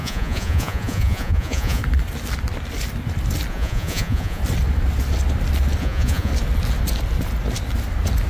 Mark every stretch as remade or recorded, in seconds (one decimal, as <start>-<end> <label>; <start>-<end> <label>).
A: 0.0-1.8 remade; 1.8-3.5 recorded; 3.5-4.4 remade; 4.4-5.8 recorded; 5.8-6.3 remade; 6.3-8.3 recorded